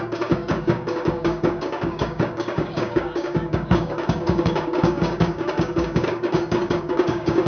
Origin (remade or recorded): remade